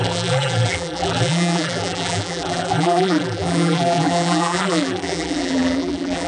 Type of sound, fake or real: fake